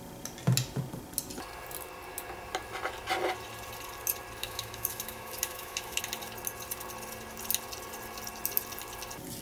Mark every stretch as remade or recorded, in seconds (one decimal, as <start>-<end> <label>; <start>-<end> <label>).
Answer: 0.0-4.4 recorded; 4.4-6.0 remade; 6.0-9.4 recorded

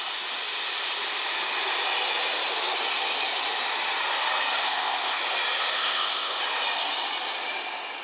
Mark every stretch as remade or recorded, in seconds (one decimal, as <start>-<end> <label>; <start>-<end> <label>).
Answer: 0.0-4.6 recorded; 4.6-5.2 remade; 5.2-5.7 recorded; 5.7-6.4 remade; 6.4-8.0 recorded

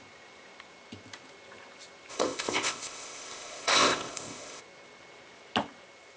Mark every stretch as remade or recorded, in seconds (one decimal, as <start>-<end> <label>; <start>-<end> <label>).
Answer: 0.0-2.1 recorded; 2.1-4.6 remade; 4.6-6.2 recorded

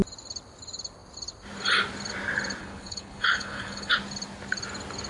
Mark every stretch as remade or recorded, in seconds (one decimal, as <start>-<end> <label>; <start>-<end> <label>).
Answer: 0.0-2.6 recorded; 2.6-4.0 remade; 4.0-5.1 recorded

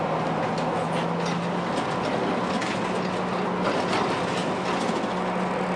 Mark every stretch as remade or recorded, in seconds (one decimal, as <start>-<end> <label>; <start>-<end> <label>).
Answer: 0.0-5.8 recorded

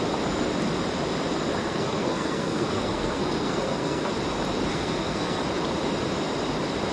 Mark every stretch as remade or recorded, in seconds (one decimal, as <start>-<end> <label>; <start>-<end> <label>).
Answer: 0.0-1.6 recorded; 1.6-4.1 remade; 4.1-4.7 recorded; 4.7-5.4 remade; 5.4-6.9 recorded

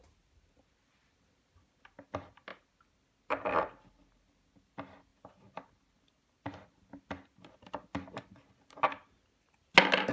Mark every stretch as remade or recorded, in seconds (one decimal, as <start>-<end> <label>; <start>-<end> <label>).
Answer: 0.0-10.1 recorded